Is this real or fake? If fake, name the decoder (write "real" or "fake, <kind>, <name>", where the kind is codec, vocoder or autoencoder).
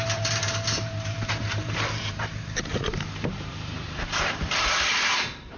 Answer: fake, vocoder, BigVGAN v2